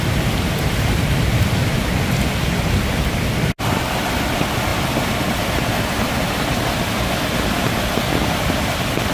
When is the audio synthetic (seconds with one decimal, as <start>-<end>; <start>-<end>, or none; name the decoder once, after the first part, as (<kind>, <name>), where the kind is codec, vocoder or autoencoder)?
none